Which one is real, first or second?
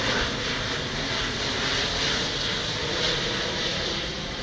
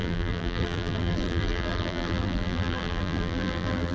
first